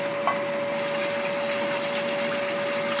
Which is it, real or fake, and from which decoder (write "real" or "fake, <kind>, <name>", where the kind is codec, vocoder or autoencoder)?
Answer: real